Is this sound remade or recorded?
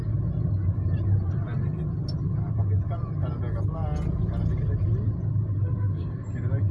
recorded